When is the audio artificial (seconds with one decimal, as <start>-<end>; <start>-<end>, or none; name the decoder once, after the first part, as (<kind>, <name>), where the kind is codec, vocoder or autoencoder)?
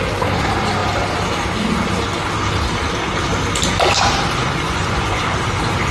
4.4-5.2 (vocoder, Vocos)